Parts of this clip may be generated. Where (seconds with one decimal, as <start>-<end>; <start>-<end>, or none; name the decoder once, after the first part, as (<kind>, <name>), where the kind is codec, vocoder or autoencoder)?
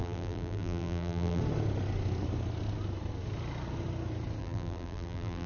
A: 0.0-1.4 (vocoder, BigVGAN v2); 4.4-5.5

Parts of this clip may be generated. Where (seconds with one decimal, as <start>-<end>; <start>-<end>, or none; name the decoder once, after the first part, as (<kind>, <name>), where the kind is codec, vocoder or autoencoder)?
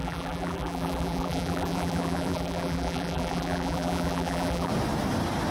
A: 0.0-4.7 (vocoder, BigVGAN v2)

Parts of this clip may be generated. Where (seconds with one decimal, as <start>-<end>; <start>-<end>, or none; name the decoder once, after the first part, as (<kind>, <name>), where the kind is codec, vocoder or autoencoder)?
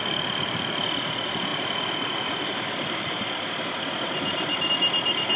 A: 1.5-4.7 (vocoder, BigVGAN v2)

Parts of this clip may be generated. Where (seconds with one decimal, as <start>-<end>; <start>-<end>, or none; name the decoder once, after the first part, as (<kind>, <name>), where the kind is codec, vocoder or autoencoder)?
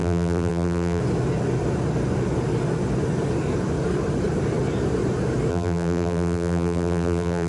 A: 0.0-1.0 (vocoder, BigVGAN v2); 5.5-7.5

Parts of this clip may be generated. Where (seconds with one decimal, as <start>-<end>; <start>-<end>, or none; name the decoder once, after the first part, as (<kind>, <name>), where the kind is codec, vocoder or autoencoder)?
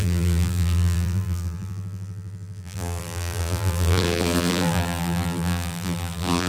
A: 0.0-6.5 (vocoder, BigVGAN v2)